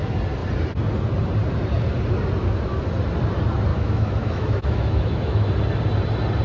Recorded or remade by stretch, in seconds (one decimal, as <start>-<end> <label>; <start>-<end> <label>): 0.0-3.7 recorded; 3.7-5.5 remade; 5.5-6.4 recorded